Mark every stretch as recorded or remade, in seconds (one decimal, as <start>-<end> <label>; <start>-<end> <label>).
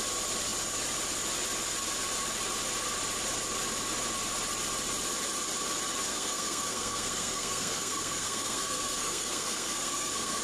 0.0-6.1 recorded; 6.1-10.4 remade